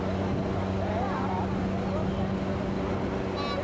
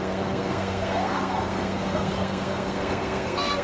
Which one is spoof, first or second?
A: second